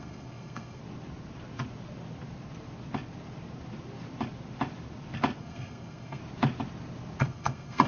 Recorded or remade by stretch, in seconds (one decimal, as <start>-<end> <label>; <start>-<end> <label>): 0.0-0.8 remade; 0.8-5.4 recorded; 5.4-6.2 remade; 6.2-7.2 recorded; 7.2-7.9 remade